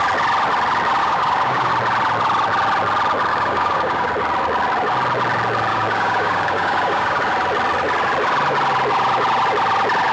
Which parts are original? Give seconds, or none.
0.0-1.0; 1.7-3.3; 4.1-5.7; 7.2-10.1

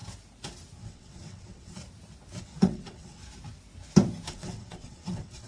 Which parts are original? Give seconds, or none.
0.0-0.8; 1.8-2.4; 3.2-4.3

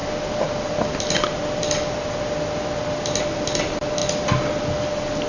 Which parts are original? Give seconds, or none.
0.0-5.3

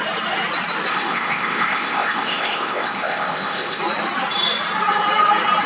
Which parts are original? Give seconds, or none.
0.0-0.9; 3.8-5.7

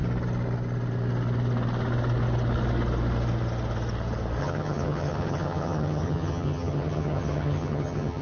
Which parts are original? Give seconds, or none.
0.0-4.4

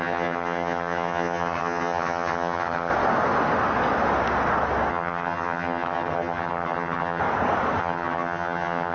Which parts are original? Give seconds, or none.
2.9-4.9; 7.2-7.8

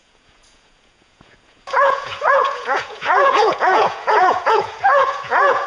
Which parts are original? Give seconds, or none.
none